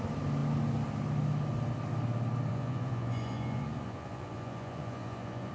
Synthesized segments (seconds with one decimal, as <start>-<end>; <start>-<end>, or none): 2.5-5.5